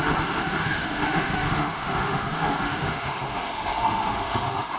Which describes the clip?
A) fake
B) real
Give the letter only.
A